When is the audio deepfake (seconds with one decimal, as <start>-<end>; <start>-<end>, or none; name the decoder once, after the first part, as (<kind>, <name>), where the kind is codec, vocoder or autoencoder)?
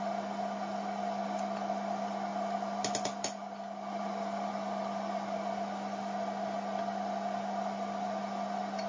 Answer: none